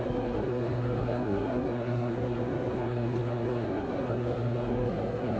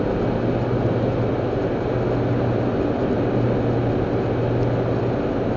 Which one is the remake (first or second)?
first